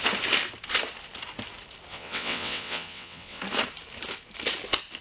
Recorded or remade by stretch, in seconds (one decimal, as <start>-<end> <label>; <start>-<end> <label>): 0.0-1.9 recorded; 1.9-3.4 remade; 3.4-5.0 recorded